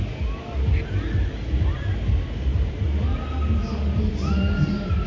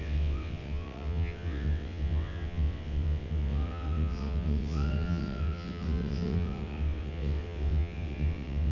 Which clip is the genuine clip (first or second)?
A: first